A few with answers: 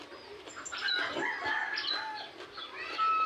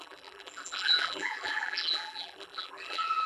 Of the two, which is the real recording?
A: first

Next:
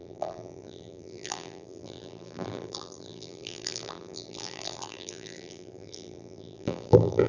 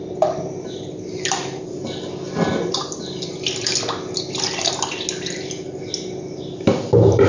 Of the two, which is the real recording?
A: second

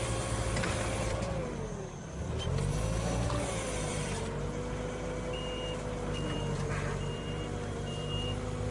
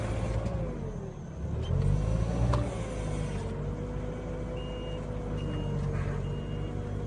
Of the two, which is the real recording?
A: second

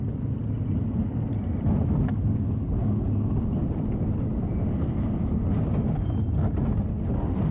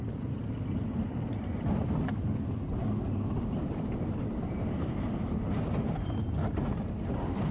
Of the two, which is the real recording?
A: first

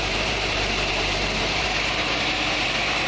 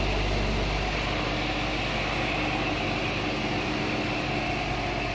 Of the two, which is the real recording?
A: second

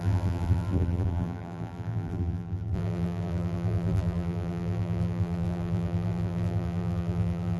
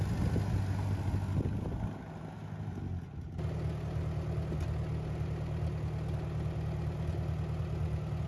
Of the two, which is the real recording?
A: second